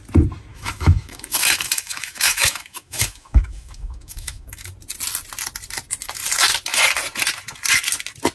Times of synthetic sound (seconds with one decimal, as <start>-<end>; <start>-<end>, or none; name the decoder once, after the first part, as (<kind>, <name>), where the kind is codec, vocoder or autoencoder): 0.5-4.7 (autoencoder, DAC-VAE)

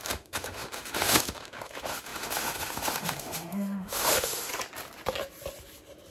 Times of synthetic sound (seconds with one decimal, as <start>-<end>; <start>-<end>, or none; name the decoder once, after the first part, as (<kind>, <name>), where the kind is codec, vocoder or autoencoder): 0.0-4.5 (autoencoder, DAC-VAE)

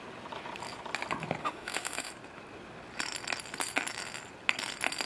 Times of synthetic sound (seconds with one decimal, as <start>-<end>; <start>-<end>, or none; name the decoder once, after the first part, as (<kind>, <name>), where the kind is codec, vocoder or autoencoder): 1.4-2.1 (autoencoder, DAC-VAE)

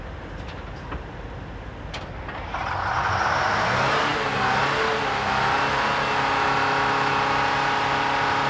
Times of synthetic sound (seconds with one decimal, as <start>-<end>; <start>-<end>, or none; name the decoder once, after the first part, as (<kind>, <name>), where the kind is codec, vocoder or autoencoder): 6.6-7.1 (autoencoder, DAC-VAE)

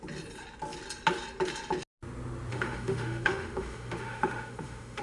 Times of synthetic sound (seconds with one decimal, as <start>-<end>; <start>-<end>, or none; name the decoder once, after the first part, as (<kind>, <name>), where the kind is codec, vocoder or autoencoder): 2.5-5.0 (autoencoder, DAC-VAE)

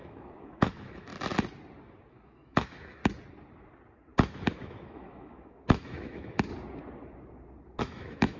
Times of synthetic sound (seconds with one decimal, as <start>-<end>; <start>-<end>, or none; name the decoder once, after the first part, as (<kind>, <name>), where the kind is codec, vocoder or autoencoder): 0.0-1.1 (autoencoder, DAC-VAE); 2.1-3.0; 4.5-6.5; 7.8-8.4

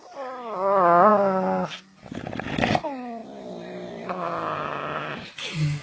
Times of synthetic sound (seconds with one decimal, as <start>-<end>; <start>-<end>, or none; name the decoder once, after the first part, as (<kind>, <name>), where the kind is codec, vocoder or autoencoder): none